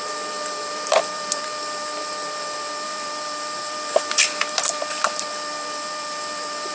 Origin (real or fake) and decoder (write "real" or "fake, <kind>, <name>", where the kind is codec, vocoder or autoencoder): fake, vocoder, BigVGAN v2